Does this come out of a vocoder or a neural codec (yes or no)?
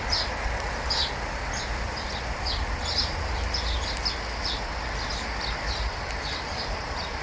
no